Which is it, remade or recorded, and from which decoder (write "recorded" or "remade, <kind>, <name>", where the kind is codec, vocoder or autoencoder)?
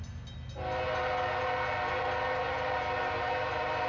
recorded